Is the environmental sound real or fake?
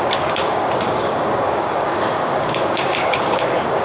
fake